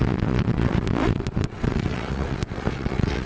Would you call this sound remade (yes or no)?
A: yes